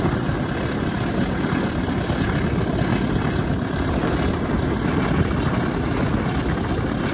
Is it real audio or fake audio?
real